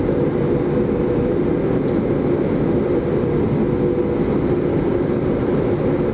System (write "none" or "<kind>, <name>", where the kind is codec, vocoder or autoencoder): none